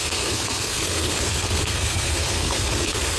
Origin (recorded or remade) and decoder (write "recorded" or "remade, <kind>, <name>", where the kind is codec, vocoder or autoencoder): remade, codec, SNAC